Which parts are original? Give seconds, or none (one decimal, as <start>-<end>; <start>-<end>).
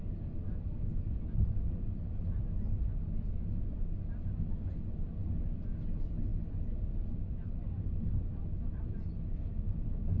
0.0-10.2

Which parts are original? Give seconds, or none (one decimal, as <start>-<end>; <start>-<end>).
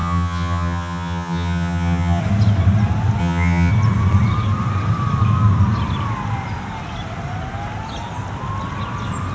2.2-3.2; 3.7-9.3